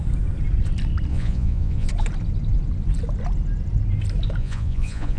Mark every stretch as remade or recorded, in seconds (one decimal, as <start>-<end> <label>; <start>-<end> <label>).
0.0-1.1 recorded; 1.1-1.9 remade; 1.9-4.4 recorded; 4.4-5.2 remade